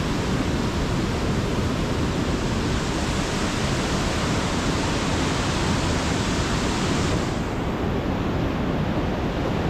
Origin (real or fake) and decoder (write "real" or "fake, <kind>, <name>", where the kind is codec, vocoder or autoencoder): real